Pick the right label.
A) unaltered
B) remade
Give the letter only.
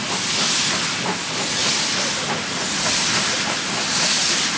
A